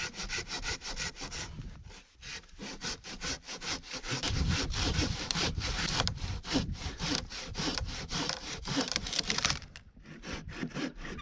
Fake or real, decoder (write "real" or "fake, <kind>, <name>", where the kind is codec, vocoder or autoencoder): fake, vocoder, BigVGAN v2